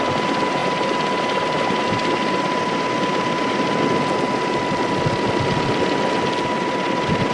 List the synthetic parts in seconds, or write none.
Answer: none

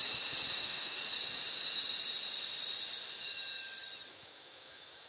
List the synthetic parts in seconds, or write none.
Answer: 0.6-1.0; 4.1-5.1

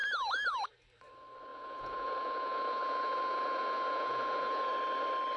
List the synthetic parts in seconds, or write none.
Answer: 1.5-4.7

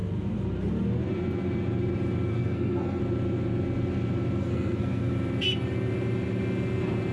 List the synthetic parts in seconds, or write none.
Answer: 2.3-3.0; 4.4-5.1

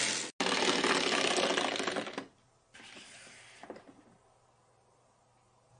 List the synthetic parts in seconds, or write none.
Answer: none